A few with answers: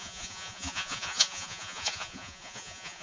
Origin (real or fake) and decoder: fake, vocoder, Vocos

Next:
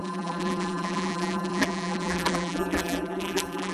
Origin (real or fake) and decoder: fake, vocoder, BigVGAN v2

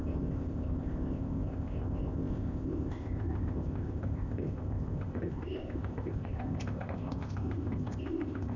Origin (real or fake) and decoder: fake, codec, ZipCodec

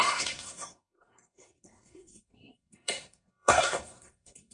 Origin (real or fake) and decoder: fake, codec, SNAC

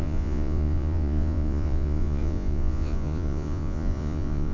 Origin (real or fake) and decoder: fake, vocoder, Vocos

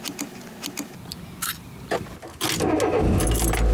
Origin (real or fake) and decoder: real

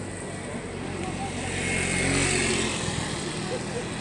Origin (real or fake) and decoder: real